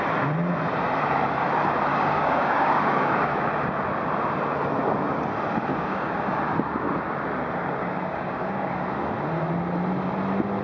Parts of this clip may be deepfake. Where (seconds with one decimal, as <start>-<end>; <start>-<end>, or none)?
1.9-3.4; 5.7-6.2; 7.8-8.7